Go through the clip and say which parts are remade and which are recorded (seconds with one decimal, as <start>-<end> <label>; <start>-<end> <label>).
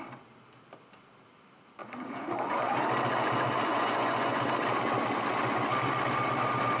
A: 0.0-1.8 recorded; 1.8-2.7 remade; 2.7-3.7 recorded; 3.7-4.4 remade; 4.4-6.8 recorded